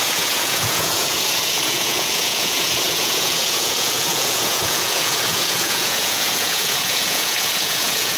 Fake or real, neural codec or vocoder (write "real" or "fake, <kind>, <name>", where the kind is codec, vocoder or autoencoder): fake, vocoder, Vocos